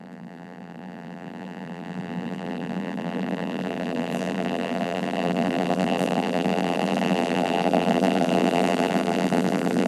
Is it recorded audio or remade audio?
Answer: remade